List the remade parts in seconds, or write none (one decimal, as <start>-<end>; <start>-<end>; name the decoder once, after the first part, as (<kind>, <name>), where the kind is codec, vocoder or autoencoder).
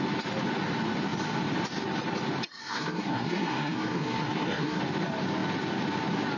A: 2.6-4.8 (codec, SNAC)